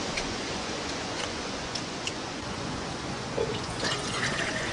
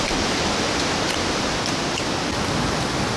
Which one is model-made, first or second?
first